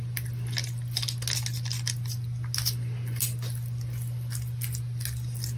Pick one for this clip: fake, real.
real